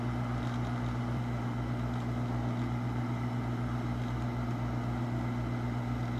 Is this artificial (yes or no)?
no